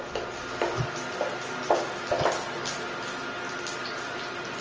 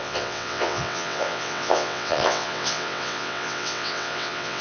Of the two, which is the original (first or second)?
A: first